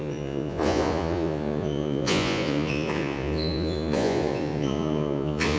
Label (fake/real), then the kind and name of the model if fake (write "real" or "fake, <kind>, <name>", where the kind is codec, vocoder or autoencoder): fake, vocoder, Vocos